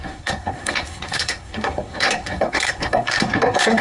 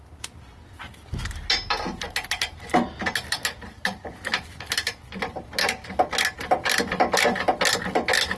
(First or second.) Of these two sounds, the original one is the second